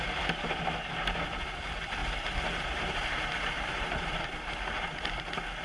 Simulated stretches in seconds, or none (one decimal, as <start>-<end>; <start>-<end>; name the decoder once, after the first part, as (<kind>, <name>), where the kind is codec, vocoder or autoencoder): none